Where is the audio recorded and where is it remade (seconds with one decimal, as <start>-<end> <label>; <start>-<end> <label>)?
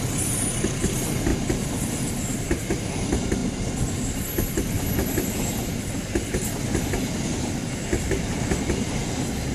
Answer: 0.0-9.5 recorded